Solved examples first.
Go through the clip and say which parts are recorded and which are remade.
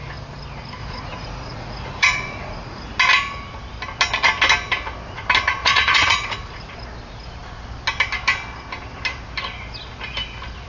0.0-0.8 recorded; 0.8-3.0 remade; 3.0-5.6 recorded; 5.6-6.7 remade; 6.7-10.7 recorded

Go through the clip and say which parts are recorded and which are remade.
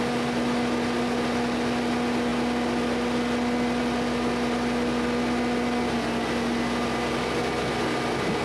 0.0-8.4 recorded